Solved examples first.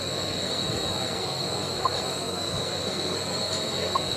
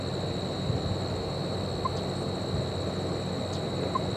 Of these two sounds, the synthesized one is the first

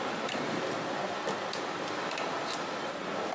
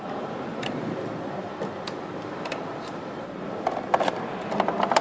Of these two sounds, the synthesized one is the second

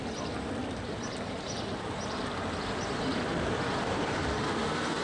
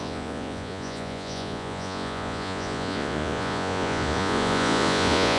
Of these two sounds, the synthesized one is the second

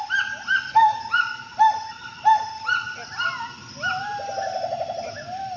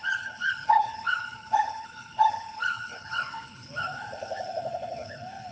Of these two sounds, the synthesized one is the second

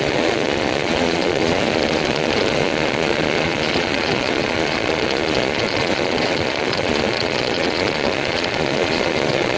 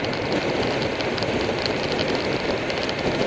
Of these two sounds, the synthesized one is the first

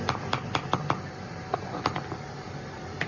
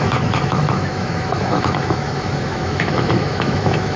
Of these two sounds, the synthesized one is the second